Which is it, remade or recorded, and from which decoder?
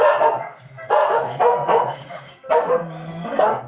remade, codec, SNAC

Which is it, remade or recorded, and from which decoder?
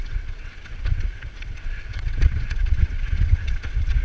remade, vocoder, WaveNeXt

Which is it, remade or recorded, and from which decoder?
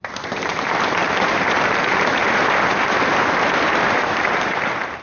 remade, vocoder, BigVGAN v2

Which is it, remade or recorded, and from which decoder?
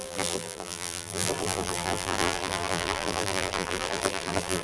remade, vocoder, BigVGAN v2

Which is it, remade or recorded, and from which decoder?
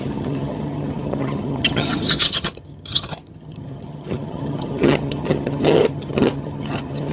remade, vocoder, HiFi-GAN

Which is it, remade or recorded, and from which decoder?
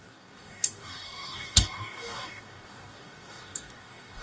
remade, codec, DAC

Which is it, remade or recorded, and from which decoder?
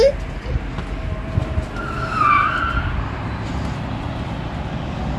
recorded